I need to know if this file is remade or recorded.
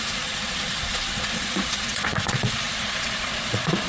remade